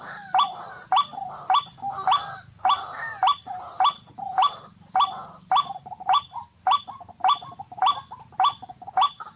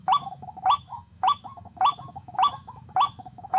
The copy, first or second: second